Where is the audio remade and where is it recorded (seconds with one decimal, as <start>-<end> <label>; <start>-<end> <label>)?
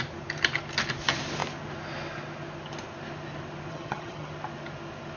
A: 0.0-3.7 recorded; 3.7-4.3 remade; 4.3-5.2 recorded